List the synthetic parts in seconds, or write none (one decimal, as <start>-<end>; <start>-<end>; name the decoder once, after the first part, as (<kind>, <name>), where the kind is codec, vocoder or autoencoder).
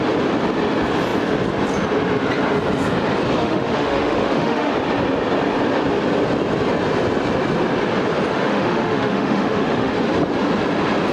3.4-4.7 (autoencoder, DAC-VAE); 8.3-9.9